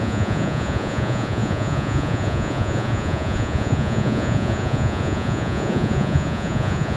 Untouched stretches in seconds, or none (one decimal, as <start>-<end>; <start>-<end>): none